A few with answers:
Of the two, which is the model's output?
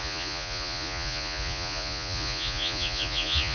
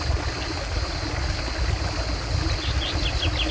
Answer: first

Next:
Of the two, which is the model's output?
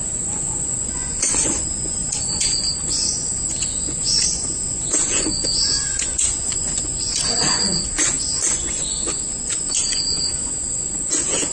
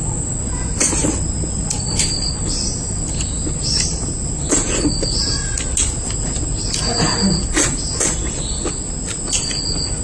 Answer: first